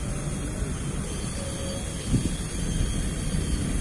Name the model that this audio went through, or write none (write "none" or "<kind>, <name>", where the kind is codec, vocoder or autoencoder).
none